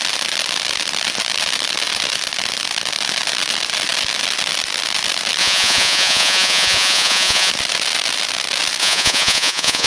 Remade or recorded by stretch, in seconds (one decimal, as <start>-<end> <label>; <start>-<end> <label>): 0.0-5.4 recorded; 5.4-7.5 remade; 7.5-8.8 recorded; 8.8-9.9 remade